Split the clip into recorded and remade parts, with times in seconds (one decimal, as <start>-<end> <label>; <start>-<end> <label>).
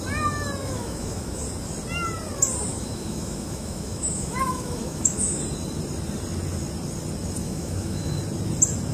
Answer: 0.0-0.6 recorded; 0.6-1.4 remade; 1.4-2.7 recorded; 2.7-5.4 remade; 5.4-7.4 recorded; 7.4-8.2 remade; 8.2-8.9 recorded